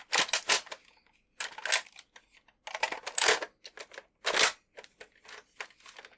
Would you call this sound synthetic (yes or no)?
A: no